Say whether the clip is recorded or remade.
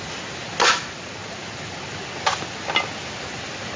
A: recorded